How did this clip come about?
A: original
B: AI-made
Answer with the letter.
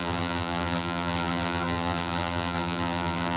B